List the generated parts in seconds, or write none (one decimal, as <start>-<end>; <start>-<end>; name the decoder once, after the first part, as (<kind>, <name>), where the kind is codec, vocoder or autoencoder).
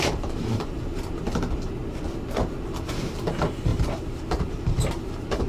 0.0-1.8 (vocoder, BigVGAN v2); 2.4-5.5